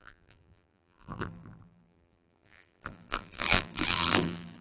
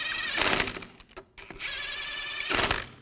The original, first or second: second